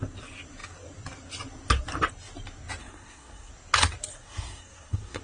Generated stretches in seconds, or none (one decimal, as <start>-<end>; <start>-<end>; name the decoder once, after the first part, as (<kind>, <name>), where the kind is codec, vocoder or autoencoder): 2.8-3.5 (codec, SNAC); 4.1-5.2